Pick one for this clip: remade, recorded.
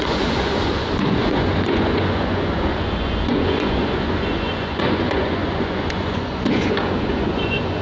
remade